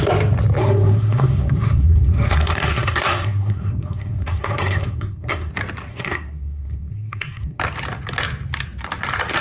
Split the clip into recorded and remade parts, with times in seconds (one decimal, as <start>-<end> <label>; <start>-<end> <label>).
0.0-0.6 recorded; 0.6-5.5 remade; 5.5-5.9 recorded; 5.9-7.6 remade; 7.6-9.4 recorded